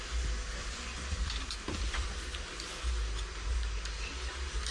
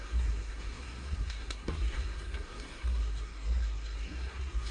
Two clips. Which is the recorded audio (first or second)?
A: first